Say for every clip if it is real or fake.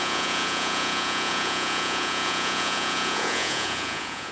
fake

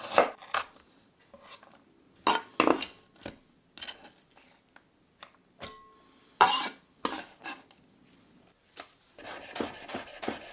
real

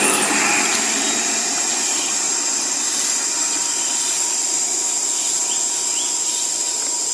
real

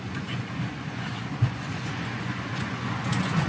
fake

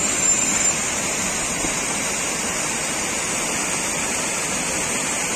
real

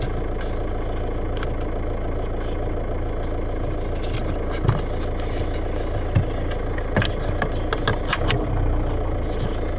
real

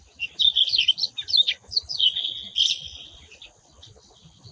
real